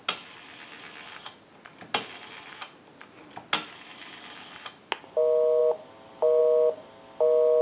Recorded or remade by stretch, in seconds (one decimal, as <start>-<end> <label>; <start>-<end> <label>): 0.0-7.6 recorded